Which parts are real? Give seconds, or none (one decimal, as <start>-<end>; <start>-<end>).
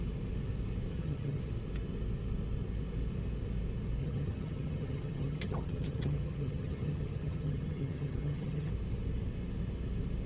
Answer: 0.0-0.9; 1.5-4.0; 8.7-10.3